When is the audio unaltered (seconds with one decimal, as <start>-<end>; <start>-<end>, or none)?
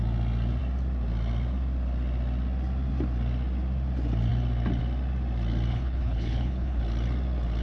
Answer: 0.0-5.7; 6.8-7.6